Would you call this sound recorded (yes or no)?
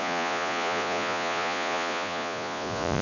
no